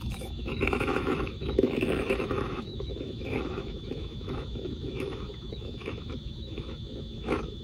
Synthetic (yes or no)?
yes